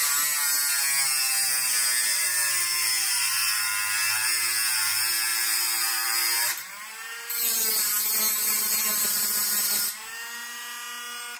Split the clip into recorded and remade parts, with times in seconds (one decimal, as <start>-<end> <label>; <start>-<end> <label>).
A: 0.0-2.1 recorded; 2.1-3.7 remade; 3.7-5.3 recorded; 5.3-7.7 remade; 7.7-8.4 recorded; 8.4-9.1 remade; 9.1-11.4 recorded